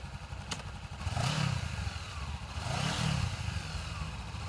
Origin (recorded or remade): recorded